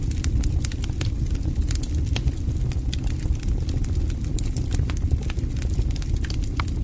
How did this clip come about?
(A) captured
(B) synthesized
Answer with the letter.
A